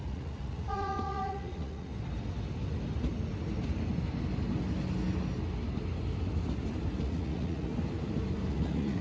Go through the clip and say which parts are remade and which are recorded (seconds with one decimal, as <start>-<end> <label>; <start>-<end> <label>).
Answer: 0.0-1.9 remade; 1.9-7.0 recorded; 7.0-7.7 remade; 7.7-8.5 recorded; 8.5-9.0 remade